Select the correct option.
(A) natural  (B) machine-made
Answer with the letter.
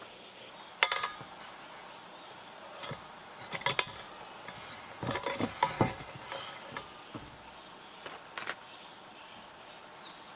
A